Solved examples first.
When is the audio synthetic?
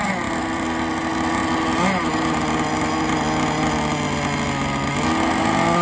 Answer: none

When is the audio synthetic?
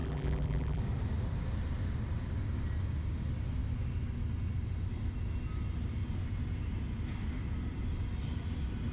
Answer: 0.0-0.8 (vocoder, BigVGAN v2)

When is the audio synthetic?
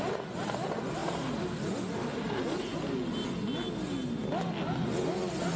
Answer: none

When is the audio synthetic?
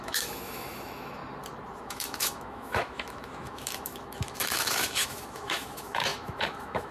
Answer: 0.0-1.2 (autoencoder, DAC-VAE); 1.8-6.9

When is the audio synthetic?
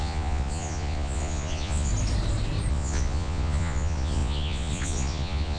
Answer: 0.0-1.9 (vocoder, Vocos); 2.7-5.6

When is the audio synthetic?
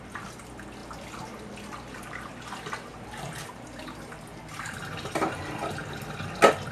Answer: 2.9-5.4 (vocoder, BigVGAN v2)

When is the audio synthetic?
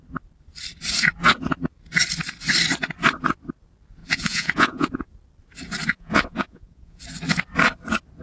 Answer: 4.0-5.1 (vocoder, Vocos); 5.9-7.0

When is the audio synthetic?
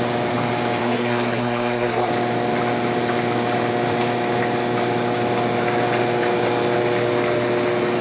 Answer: 0.8-2.1 (codec, SNAC)